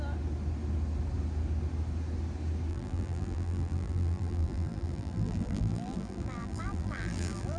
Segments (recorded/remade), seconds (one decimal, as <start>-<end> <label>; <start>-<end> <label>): 0.0-2.7 recorded; 2.7-7.6 remade